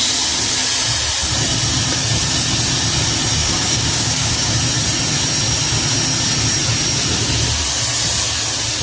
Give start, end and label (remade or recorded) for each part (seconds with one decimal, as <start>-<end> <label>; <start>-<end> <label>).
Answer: 0.0-3.4 recorded; 3.4-4.6 remade; 4.6-8.8 recorded